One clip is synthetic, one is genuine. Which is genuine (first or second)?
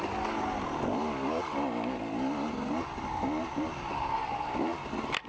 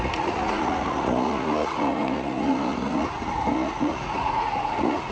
first